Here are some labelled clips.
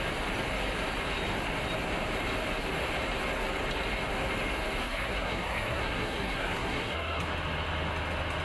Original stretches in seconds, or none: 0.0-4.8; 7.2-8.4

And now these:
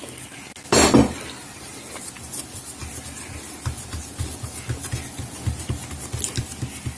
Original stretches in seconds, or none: 0.0-7.0